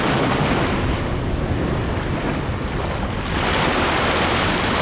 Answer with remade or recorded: recorded